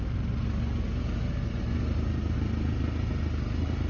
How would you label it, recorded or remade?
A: recorded